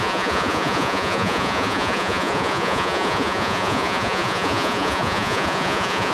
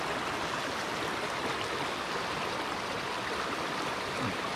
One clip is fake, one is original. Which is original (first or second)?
second